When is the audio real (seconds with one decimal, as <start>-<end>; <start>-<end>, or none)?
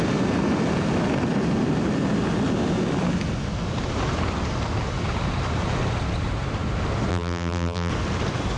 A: 0.0-7.1; 7.9-8.6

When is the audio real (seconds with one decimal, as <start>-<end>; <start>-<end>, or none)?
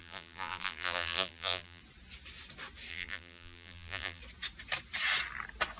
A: 1.8-2.9; 4.2-5.8